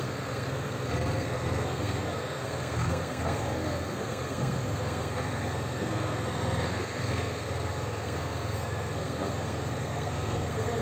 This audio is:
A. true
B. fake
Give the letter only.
B